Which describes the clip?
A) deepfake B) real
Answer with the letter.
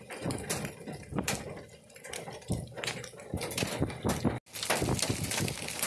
B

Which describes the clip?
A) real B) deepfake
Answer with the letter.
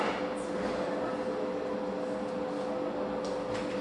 A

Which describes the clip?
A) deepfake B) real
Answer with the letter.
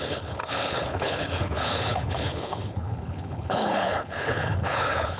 A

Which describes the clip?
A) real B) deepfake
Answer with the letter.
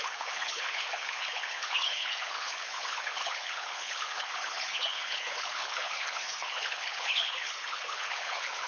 B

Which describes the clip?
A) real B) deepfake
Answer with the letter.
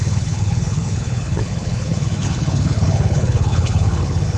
B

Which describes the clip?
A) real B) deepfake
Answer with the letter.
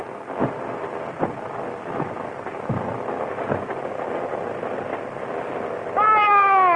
A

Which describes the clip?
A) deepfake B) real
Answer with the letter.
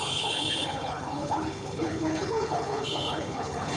A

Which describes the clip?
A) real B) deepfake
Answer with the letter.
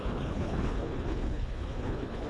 B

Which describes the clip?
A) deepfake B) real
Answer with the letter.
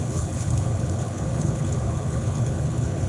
A